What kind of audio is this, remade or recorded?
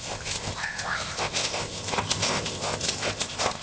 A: remade